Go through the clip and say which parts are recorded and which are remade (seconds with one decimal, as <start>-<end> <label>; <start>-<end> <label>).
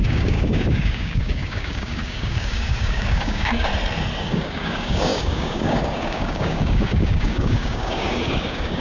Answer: 0.0-3.7 remade; 3.7-4.3 recorded; 4.3-8.8 remade